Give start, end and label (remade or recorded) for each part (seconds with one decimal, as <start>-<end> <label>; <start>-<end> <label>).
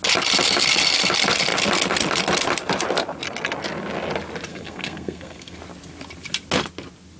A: 0.0-4.5 recorded; 4.5-5.6 remade; 5.6-7.2 recorded